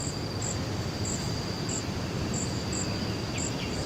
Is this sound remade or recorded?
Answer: recorded